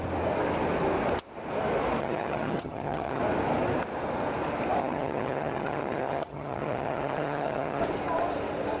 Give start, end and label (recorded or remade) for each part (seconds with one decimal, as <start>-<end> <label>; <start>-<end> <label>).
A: 0.0-2.0 recorded; 2.0-3.2 remade; 3.2-4.8 recorded; 4.8-7.8 remade; 7.8-8.8 recorded